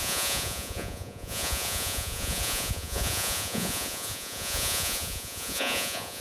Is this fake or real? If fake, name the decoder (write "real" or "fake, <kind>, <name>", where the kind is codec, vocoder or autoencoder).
fake, vocoder, Vocos